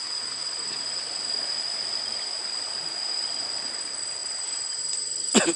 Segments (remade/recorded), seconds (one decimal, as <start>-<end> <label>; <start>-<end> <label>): 0.0-5.6 remade